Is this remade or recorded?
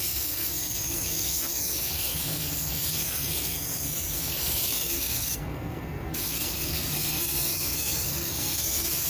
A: remade